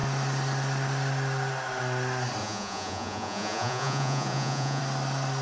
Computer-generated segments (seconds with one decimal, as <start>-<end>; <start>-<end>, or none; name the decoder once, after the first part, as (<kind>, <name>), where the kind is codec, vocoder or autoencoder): 2.4-4.8 (vocoder, Vocos)